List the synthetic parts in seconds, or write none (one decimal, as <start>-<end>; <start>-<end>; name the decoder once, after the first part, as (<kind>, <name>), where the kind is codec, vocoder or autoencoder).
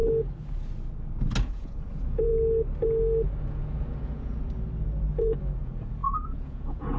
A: 1.4-2.3 (vocoder, Vocos); 3.4-4.4; 5.1-7.0